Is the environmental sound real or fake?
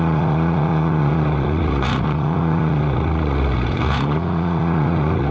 fake